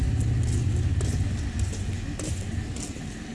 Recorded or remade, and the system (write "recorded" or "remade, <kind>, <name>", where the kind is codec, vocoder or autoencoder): recorded